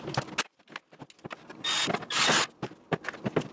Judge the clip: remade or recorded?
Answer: recorded